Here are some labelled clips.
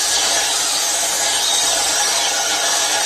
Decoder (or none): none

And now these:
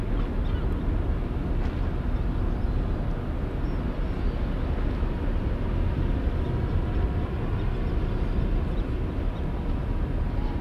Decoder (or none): none